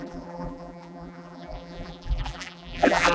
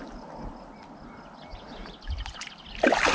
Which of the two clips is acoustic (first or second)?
second